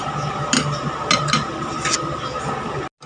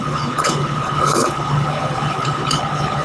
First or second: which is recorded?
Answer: first